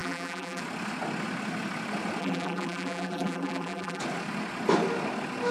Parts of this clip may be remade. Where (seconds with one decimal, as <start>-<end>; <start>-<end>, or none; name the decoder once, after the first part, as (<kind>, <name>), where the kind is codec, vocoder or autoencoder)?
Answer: 0.0-0.6 (vocoder, BigVGAN v2); 2.2-4.0